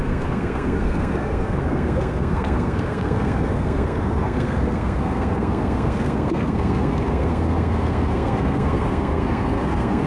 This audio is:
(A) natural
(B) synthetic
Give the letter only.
B